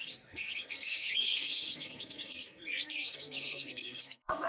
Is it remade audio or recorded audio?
remade